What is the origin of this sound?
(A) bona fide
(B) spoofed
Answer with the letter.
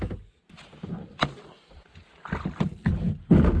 A